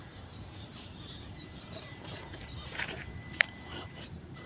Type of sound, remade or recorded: remade